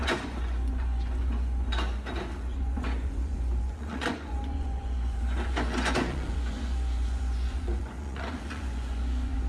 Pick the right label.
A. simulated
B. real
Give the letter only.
A